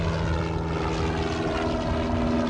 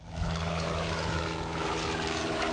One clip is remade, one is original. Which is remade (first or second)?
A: second